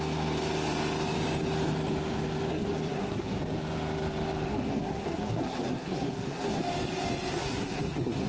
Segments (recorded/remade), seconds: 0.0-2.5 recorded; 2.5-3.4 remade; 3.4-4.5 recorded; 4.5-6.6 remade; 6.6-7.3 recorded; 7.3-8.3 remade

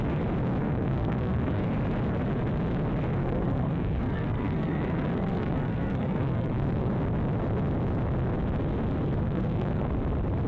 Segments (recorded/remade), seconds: 0.0-0.6 recorded; 0.6-1.6 remade; 1.6-3.2 recorded; 3.2-6.9 remade; 6.9-9.2 recorded; 9.2-9.9 remade; 9.9-10.5 recorded

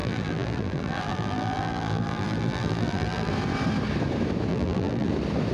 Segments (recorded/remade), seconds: 0.0-3.3 remade; 3.3-4.5 recorded; 4.5-5.1 remade; 5.1-5.5 recorded

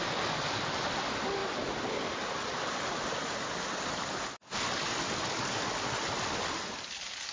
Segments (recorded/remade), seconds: 0.0-7.3 recorded

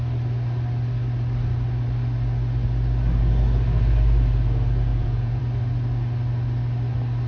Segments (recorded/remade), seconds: 0.0-4.9 recorded; 4.9-5.4 remade; 5.4-7.3 recorded